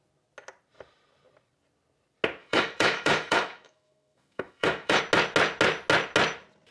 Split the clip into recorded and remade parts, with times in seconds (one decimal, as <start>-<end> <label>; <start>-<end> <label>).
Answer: 0.0-2.4 recorded; 2.4-5.0 remade; 5.0-6.7 recorded